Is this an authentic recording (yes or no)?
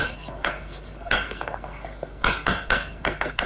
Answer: no